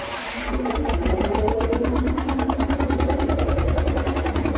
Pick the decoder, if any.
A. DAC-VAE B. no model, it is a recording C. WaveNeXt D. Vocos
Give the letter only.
B